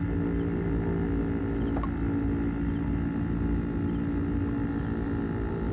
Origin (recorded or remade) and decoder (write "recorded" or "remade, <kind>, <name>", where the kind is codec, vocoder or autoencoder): recorded